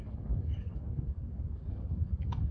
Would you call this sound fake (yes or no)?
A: yes